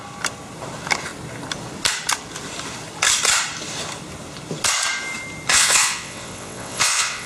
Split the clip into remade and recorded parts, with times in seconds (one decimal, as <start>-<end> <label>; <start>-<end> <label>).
0.0-5.5 recorded; 5.5-7.3 remade